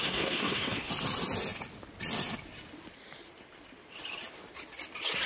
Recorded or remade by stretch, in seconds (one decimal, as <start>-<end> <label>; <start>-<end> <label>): 0.0-0.9 remade; 0.9-5.2 recorded